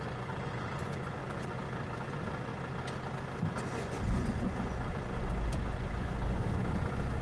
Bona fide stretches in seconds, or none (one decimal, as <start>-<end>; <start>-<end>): 2.5-3.7